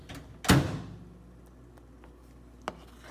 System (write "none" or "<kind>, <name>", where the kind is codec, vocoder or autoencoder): none